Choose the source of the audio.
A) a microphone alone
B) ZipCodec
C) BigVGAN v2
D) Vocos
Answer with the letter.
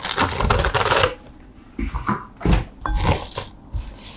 A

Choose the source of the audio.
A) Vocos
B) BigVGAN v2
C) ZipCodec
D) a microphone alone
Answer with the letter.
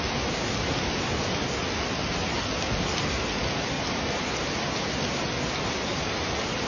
D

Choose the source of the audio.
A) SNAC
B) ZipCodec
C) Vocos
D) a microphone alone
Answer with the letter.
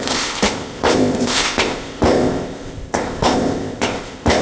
B